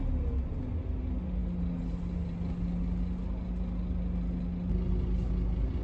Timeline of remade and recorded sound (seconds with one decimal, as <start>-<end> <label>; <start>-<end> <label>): 0.0-5.8 recorded